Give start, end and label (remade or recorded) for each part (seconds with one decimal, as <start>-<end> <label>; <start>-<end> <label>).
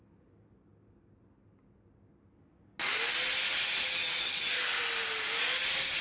0.0-6.0 recorded